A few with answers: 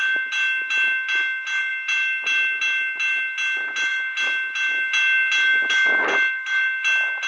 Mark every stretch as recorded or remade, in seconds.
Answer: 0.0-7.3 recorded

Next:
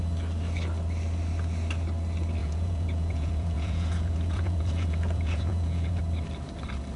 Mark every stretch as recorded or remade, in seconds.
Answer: 0.0-2.4 recorded; 2.4-6.0 remade; 6.0-7.0 recorded

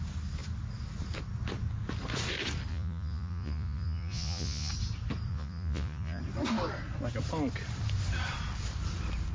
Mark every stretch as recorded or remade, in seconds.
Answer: 0.0-2.7 recorded; 2.7-4.7 remade; 4.7-5.3 recorded; 5.3-6.2 remade; 6.2-9.3 recorded

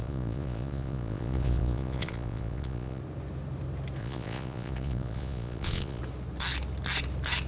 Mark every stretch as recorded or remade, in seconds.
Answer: 0.0-3.0 remade; 3.0-4.0 recorded; 4.0-6.0 remade; 6.0-7.5 recorded

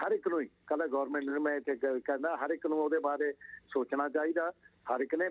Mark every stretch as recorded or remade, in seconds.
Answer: 0.0-5.3 recorded

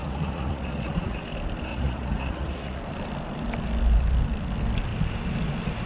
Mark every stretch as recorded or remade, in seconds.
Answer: 0.0-1.2 remade; 1.2-1.7 recorded; 1.7-2.8 remade; 2.8-5.9 recorded